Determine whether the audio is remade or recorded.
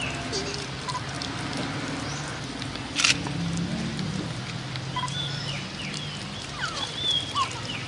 recorded